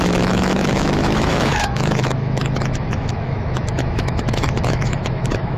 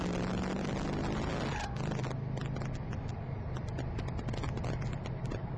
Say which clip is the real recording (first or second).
second